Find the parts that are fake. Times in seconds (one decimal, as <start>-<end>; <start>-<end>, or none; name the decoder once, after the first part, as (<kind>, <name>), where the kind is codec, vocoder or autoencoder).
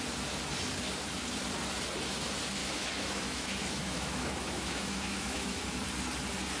2.6-5.6 (autoencoder, DAC-VAE)